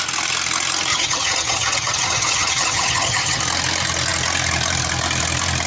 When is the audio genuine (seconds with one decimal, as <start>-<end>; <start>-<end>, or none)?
0.0-0.9; 3.4-5.7